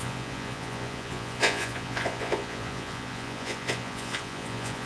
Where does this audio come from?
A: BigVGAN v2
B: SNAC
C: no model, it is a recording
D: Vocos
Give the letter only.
D